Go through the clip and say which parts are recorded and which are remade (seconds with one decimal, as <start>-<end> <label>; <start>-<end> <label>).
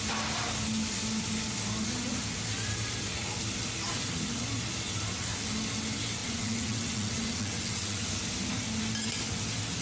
0.0-6.2 recorded; 6.2-8.1 remade; 8.1-9.8 recorded